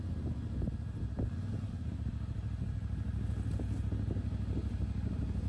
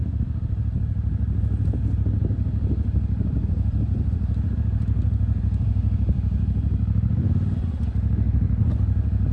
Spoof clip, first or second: second